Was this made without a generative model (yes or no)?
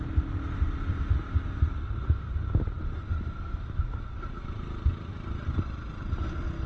yes